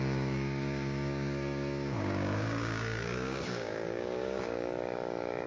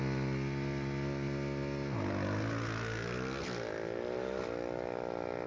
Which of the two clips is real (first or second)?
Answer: second